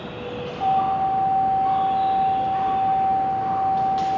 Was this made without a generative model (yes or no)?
yes